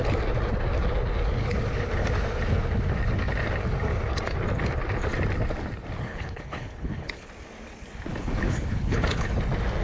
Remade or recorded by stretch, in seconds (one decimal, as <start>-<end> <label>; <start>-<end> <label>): 0.0-6.1 recorded; 6.1-7.3 remade; 7.3-8.1 recorded; 8.1-9.3 remade; 9.3-9.8 recorded